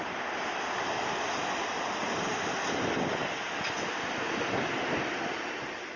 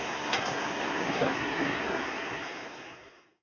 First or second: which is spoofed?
second